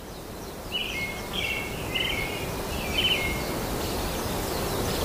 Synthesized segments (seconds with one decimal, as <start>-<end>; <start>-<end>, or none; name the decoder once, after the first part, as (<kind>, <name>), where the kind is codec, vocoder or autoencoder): 0.0-0.8 (vocoder, BigVGAN v2); 3.6-5.0